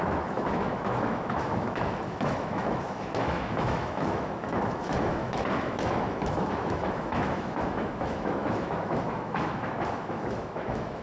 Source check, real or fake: fake